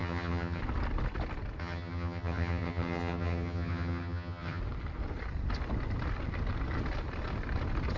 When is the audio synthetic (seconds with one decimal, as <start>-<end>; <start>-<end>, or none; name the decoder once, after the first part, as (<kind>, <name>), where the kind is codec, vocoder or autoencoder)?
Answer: 0.0-0.6 (vocoder, HiFi-GAN); 1.6-4.6